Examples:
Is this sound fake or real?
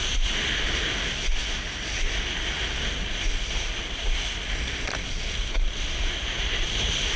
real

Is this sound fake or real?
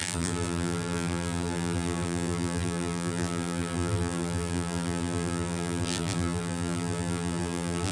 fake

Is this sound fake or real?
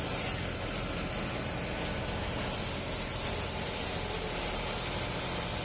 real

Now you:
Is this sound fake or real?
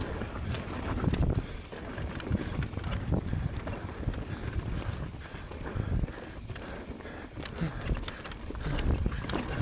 real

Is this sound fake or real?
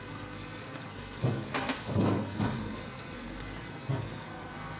fake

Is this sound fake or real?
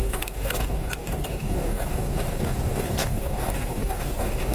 fake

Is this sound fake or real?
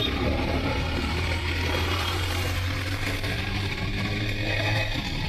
fake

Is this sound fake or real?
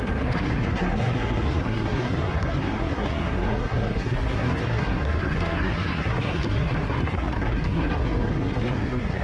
fake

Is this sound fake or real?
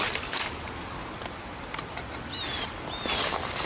real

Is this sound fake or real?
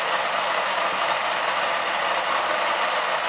real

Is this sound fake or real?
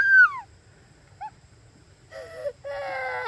real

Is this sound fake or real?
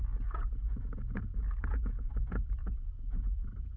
fake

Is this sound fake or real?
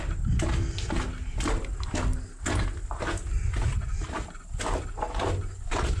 real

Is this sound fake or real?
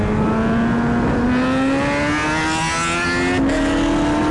real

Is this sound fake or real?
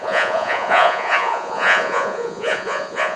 fake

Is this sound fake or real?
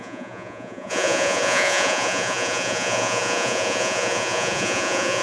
fake